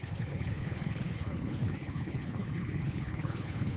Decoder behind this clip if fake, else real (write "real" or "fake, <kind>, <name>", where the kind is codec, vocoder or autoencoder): fake, codec, HILCodec